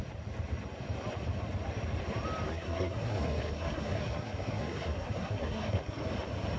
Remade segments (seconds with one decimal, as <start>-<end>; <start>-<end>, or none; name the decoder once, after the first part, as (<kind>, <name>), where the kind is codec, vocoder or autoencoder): 2.5-6.0 (codec, SNAC)